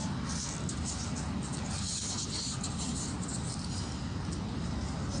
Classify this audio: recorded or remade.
recorded